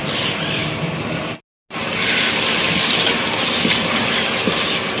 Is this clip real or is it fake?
real